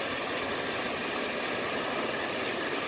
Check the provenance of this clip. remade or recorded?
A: recorded